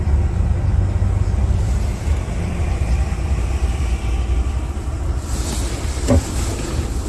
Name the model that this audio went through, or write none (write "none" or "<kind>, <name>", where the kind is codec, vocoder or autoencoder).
none